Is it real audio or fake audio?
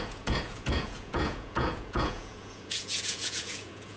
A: fake